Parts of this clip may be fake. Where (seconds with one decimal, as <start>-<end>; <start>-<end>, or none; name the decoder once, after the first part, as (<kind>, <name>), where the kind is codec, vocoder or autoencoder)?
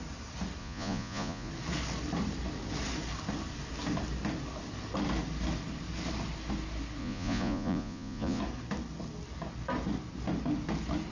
0.6-1.5 (vocoder, Vocos); 7.0-8.4